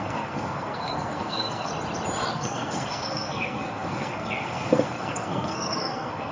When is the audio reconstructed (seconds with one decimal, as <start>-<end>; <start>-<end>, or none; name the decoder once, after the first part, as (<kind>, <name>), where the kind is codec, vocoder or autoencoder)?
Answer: 0.0-1.7 (codec, SNAC); 2.3-6.3